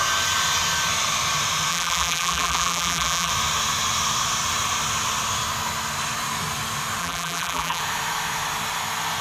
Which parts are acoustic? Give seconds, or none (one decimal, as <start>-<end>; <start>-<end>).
0.0-1.7; 3.3-7.0; 7.8-9.2